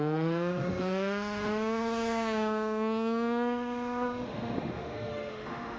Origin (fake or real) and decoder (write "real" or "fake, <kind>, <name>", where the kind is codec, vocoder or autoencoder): fake, autoencoder, DAC-VAE